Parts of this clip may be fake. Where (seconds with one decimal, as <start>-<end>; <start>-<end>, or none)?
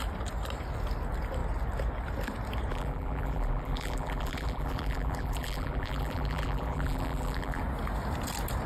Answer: 2.7-7.6